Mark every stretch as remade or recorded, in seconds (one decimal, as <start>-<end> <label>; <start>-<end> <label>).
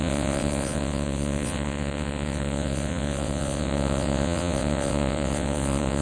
0.0-6.0 remade